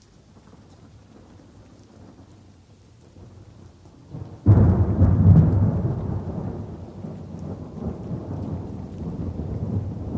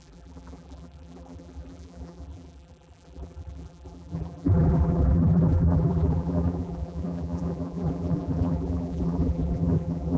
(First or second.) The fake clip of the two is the second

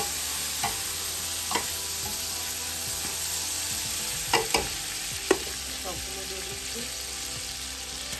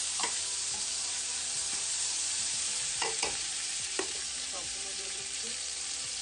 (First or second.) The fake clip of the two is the second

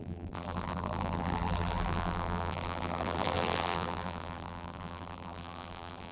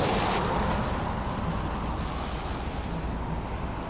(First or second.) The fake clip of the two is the first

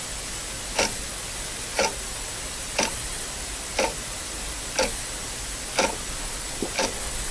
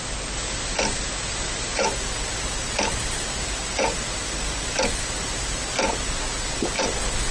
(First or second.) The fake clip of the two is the first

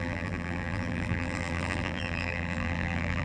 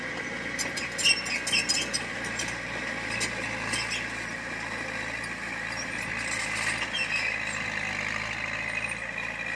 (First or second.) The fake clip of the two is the first